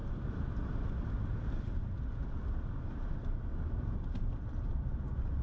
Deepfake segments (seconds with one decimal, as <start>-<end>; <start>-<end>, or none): 0.0-0.7; 3.5-5.4